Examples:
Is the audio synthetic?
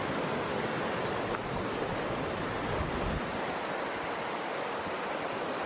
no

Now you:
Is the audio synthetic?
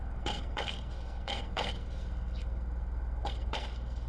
yes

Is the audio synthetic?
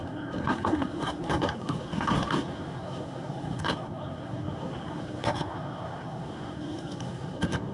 yes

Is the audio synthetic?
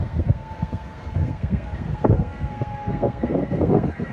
yes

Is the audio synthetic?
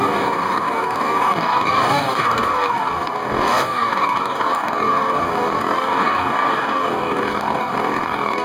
yes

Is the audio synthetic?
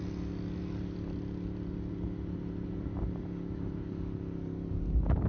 no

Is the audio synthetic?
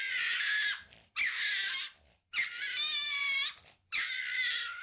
yes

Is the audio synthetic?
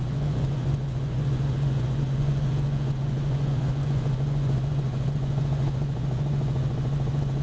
yes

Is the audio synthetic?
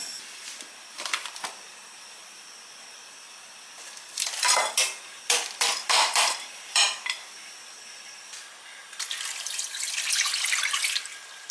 yes